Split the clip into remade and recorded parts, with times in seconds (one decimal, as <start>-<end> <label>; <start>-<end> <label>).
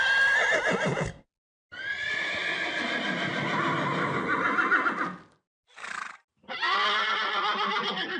0.0-8.2 recorded